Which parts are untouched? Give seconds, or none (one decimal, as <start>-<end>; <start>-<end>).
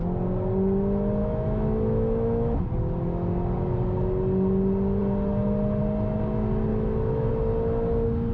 0.0-1.2; 2.6-6.7; 7.3-8.3